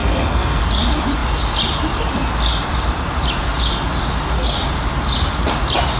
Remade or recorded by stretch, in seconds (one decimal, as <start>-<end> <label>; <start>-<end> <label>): 0.0-0.6 remade; 0.6-6.0 recorded